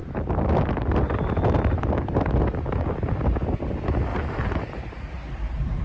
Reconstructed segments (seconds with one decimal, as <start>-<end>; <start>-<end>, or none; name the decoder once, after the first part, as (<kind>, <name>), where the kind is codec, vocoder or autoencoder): 4.1-5.8 (vocoder, BigVGAN v2)